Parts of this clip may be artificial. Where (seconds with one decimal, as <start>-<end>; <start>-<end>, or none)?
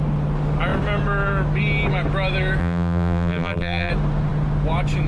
2.6-3.9